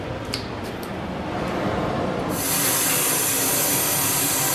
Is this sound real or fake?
fake